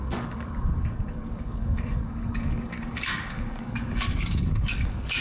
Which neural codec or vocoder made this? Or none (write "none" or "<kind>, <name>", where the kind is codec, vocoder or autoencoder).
codec, DAC